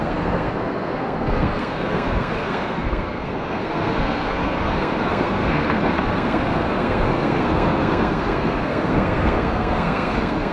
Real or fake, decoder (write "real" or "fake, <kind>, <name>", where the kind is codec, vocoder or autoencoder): fake, codec, SNAC